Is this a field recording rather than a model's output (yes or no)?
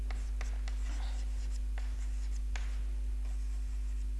yes